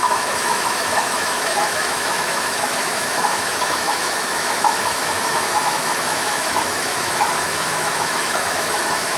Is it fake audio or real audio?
fake